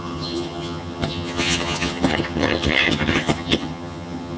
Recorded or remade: remade